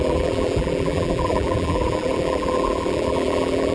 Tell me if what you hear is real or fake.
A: fake